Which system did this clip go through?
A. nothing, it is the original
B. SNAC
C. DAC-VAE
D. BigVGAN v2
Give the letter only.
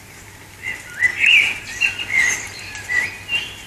A